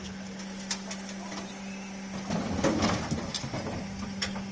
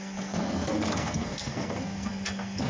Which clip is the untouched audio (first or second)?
first